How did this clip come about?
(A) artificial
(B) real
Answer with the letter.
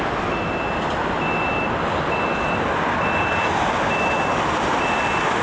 B